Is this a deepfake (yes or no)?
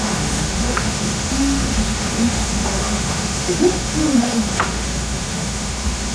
yes